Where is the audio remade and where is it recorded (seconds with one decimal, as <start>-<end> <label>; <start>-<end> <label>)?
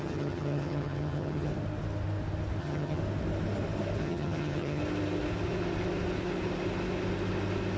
0.0-1.5 remade; 1.5-2.6 recorded; 2.6-3.0 remade; 3.0-4.0 recorded; 4.0-4.8 remade; 4.8-7.8 recorded